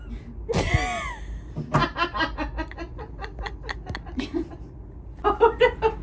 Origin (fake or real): real